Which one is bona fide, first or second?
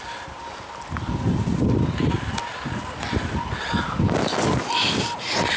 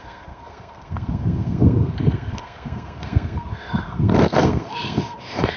first